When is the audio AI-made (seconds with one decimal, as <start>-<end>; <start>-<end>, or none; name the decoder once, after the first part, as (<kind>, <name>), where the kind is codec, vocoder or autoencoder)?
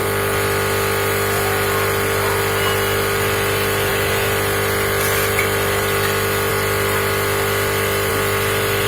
none